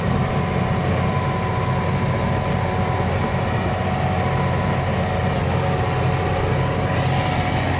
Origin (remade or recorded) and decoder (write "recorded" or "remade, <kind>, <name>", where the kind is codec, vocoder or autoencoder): recorded